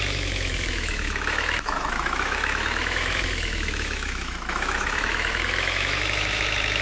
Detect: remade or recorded remade